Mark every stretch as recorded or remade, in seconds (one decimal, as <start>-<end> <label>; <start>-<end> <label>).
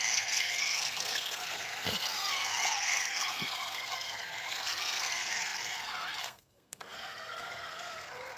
0.0-8.4 remade